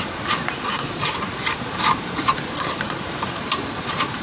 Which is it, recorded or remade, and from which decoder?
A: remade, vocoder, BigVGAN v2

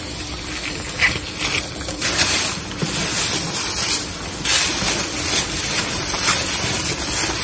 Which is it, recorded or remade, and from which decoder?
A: recorded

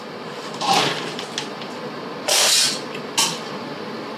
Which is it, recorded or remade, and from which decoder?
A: recorded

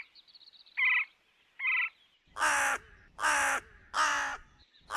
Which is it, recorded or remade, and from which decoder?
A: recorded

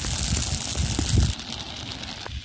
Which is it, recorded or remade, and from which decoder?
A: recorded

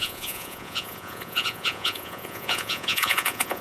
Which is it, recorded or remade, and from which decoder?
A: remade, vocoder, Vocos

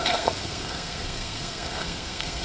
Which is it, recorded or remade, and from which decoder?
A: remade, codec, SNAC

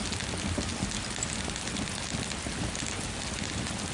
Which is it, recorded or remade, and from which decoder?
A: recorded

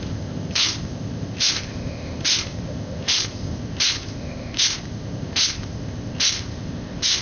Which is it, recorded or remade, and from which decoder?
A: remade, codec, ZipCodec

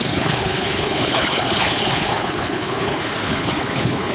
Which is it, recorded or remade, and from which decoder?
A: remade, codec, HILCodec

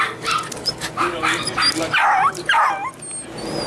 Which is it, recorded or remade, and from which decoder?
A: recorded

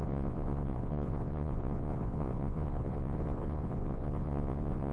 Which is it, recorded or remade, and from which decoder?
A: remade, vocoder, Vocos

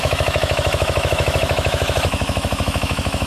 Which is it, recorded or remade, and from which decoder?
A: remade, autoencoder, DAC-VAE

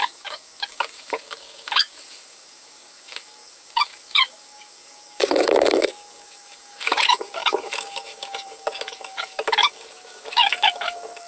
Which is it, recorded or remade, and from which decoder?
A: remade, codec, DAC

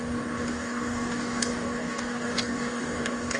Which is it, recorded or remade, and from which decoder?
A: remade, codec, DAC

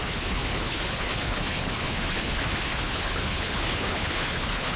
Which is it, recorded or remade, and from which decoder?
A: remade, codec, HILCodec